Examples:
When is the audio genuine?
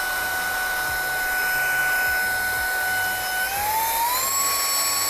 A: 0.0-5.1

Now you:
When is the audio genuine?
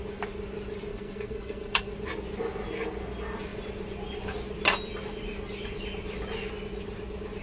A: 0.0-0.9; 1.9-7.4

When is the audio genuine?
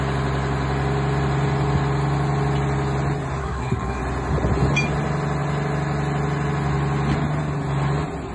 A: 0.0-3.4; 4.0-8.3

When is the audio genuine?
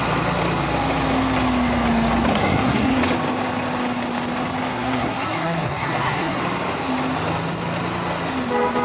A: 0.0-2.3; 3.0-4.7; 6.4-8.8